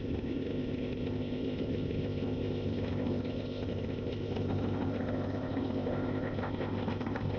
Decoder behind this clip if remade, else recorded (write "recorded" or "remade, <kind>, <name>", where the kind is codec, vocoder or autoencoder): remade, codec, ZipCodec